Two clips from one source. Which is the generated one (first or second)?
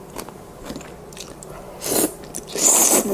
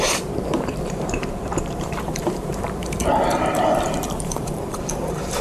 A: second